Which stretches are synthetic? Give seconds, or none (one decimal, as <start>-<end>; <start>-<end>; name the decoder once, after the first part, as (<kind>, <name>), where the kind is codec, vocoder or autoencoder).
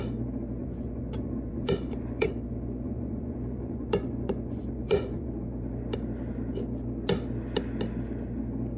0.6-5.3 (vocoder, Vocos)